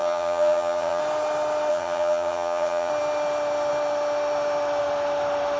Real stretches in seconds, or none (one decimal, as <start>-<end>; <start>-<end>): 1.0-1.7; 2.9-5.6